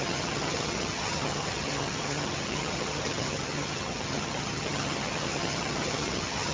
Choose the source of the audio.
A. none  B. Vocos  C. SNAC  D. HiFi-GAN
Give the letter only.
D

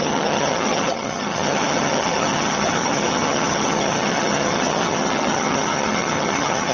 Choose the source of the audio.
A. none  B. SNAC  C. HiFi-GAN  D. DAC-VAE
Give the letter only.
C